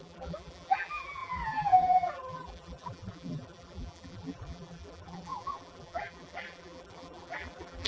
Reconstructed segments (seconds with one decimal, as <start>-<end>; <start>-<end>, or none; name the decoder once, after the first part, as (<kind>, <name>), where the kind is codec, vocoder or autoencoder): 0.0-7.9 (vocoder, BigVGAN v2)